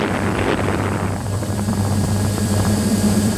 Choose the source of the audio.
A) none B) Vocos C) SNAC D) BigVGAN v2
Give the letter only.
D